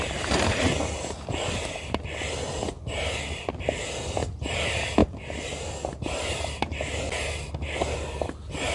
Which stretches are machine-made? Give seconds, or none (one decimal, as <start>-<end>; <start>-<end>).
none

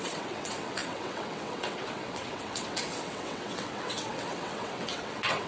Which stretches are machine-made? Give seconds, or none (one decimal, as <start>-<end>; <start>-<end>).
0.0-5.5